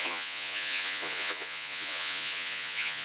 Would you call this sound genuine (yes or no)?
no